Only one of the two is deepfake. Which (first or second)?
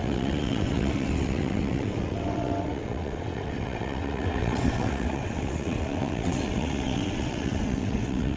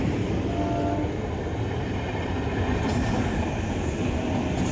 first